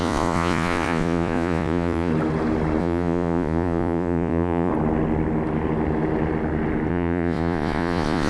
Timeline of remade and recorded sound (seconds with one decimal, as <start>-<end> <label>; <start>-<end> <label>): 0.0-2.1 remade; 2.1-2.8 recorded; 2.8-4.7 remade; 4.7-6.9 recorded; 6.9-8.3 remade